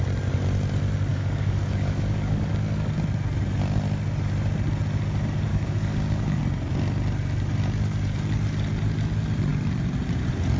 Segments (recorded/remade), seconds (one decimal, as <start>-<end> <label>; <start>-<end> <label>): 0.0-1.1 recorded; 1.1-2.5 remade; 2.5-5.5 recorded; 5.5-6.4 remade; 6.4-10.6 recorded